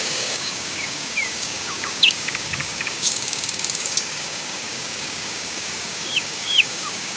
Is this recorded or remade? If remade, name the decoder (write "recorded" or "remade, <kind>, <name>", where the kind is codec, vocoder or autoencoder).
remade, codec, DAC